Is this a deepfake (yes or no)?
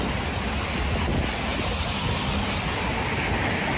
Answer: no